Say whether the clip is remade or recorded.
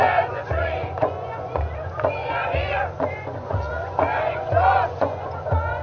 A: remade